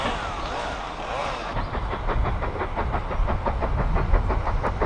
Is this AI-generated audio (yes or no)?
no